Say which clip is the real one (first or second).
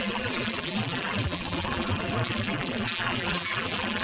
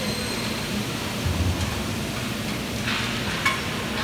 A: second